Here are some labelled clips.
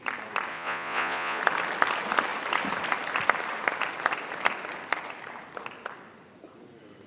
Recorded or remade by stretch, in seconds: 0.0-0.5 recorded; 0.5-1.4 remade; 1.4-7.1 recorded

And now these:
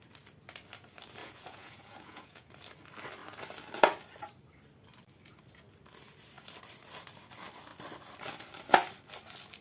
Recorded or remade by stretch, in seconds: 0.0-1.2 recorded; 1.2-2.5 remade; 2.5-9.6 recorded

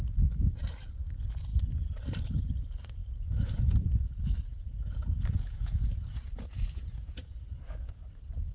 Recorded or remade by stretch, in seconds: 0.0-3.0 recorded; 3.0-4.0 remade; 4.0-4.5 recorded; 4.5-7.9 remade; 7.9-8.5 recorded

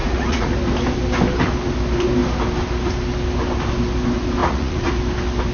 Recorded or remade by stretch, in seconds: 0.0-0.5 remade; 0.5-4.4 recorded; 4.4-4.9 remade; 4.9-5.5 recorded